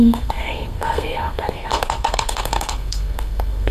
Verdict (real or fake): fake